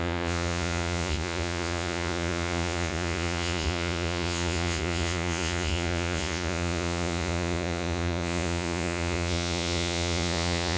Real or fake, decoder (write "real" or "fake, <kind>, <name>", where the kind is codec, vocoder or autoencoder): fake, vocoder, Vocos